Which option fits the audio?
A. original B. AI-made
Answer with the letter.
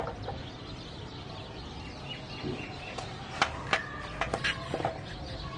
A